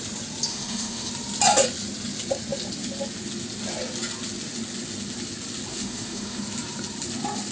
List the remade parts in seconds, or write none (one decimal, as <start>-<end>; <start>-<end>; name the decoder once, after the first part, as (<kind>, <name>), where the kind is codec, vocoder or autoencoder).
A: 0.5-1.1 (autoencoder, DAC-VAE); 5.7-6.4